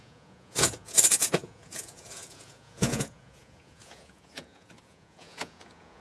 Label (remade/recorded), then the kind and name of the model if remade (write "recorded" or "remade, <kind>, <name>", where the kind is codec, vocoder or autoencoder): remade, vocoder, Vocos